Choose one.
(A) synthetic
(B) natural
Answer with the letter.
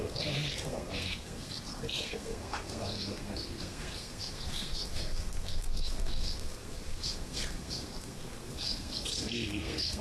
A